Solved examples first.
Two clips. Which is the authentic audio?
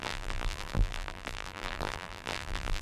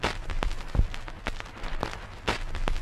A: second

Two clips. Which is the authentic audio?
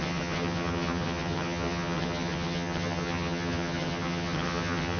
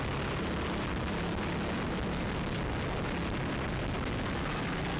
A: second